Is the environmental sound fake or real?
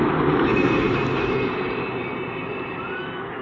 fake